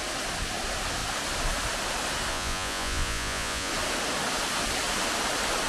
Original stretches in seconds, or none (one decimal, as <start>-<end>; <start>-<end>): 0.0-2.3; 3.7-5.7